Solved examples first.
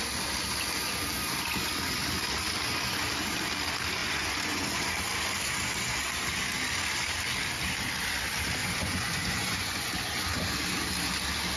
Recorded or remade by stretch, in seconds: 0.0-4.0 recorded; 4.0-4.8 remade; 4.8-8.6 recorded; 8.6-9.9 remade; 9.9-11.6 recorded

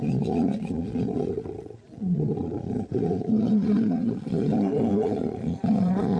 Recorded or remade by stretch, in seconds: 0.0-6.2 remade

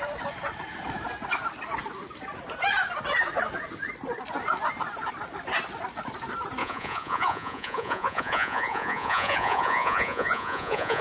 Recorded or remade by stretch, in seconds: 0.0-6.6 recorded; 6.6-11.0 remade

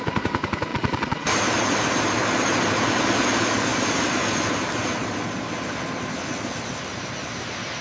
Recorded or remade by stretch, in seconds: 0.0-0.7 recorded; 0.7-1.2 remade; 1.2-7.8 recorded

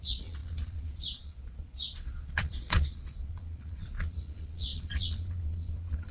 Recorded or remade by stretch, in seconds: 0.0-6.1 remade

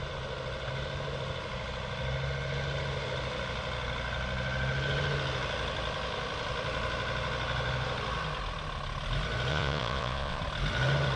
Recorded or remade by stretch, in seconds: 0.0-9.5 recorded; 9.5-10.4 remade; 10.4-11.2 recorded

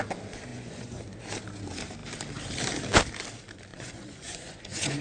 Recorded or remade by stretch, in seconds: 0.0-0.5 recorded; 0.5-1.0 remade; 1.0-3.7 recorded; 3.7-5.0 remade